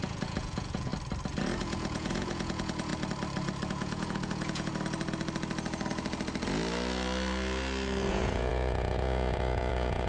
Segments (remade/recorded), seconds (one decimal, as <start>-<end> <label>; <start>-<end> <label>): 0.0-0.9 remade; 0.9-1.6 recorded; 1.6-2.9 remade; 2.9-3.7 recorded; 3.7-4.7 remade; 4.7-8.1 recorded; 8.1-10.1 remade